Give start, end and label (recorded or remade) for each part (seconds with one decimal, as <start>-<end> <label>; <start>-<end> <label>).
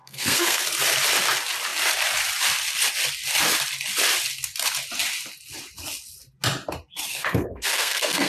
0.0-0.6 remade; 0.6-7.1 recorded; 7.1-8.3 remade